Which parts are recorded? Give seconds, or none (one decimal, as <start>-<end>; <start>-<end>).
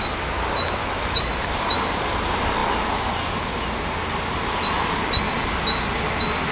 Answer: 0.0-0.8; 1.4-6.5